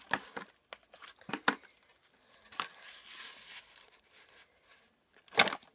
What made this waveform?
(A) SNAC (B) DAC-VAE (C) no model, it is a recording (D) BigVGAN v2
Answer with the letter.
C